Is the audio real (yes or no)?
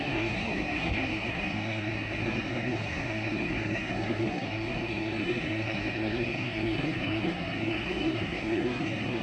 no